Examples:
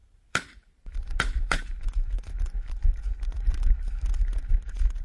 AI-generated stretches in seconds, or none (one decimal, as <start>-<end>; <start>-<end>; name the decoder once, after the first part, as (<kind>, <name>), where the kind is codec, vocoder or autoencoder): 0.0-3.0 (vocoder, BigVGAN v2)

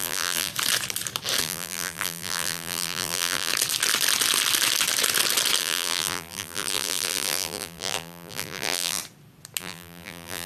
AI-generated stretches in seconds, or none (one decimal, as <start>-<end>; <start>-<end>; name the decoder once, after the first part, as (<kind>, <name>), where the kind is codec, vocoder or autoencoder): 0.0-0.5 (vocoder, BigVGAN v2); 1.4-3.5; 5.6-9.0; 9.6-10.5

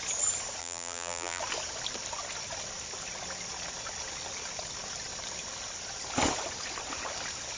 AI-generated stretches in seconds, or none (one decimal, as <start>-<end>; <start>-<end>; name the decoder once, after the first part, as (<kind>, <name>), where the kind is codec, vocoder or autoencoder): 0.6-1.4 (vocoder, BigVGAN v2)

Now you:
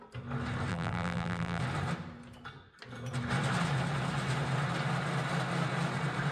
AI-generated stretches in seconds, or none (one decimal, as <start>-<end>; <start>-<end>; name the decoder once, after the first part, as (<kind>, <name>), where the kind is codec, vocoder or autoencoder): 0.7-1.6 (vocoder, BigVGAN v2)

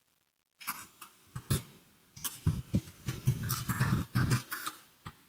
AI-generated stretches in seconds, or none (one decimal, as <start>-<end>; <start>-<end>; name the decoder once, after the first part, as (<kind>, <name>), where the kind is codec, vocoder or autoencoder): 0.0-0.5 (vocoder, BigVGAN v2); 2.8-5.3

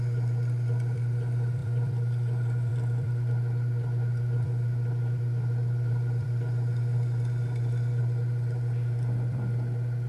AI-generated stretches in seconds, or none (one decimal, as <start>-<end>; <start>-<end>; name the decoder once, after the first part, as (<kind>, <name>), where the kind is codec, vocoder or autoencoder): 0.0-10.1 (vocoder, BigVGAN v2)